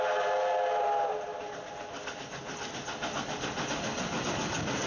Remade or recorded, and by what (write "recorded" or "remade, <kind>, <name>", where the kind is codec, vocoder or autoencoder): recorded